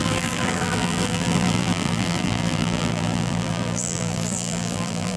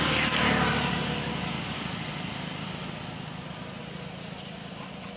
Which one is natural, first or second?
second